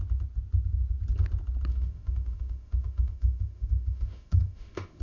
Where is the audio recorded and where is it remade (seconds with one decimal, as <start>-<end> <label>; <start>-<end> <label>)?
0.0-1.7 recorded; 1.7-5.0 remade